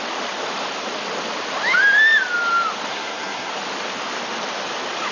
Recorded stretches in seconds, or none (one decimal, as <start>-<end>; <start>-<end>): 0.0-2.9; 3.5-5.1